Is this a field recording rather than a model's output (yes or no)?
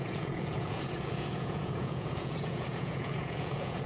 no